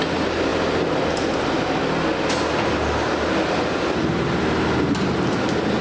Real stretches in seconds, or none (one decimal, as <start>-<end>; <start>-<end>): 0.0-5.8